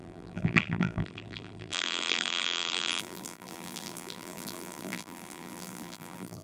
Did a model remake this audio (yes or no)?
yes